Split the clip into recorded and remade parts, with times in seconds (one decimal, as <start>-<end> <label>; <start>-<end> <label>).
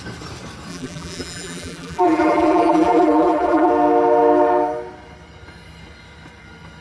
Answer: 0.0-0.7 recorded; 0.7-3.7 remade; 3.7-6.8 recorded